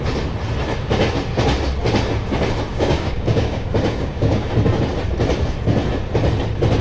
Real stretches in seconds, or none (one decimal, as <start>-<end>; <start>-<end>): 0.0-2.7; 4.5-6.8